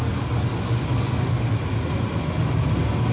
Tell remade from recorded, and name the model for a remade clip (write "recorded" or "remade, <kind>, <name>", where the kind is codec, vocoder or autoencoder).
recorded